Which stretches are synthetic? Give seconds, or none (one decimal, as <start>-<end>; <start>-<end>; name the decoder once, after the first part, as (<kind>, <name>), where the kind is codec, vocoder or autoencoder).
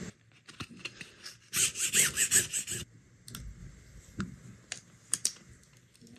none